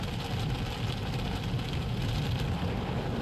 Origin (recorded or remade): recorded